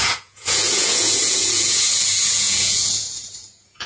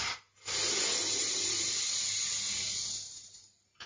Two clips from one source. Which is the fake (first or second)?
first